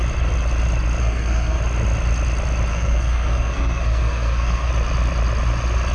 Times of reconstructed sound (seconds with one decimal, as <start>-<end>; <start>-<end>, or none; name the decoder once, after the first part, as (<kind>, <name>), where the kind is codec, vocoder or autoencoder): 1.0-1.6 (codec, SNAC); 2.7-4.7